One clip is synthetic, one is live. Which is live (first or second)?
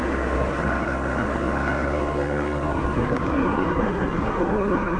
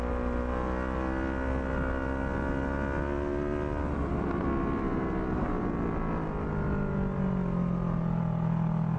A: second